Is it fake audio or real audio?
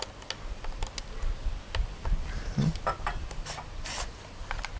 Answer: real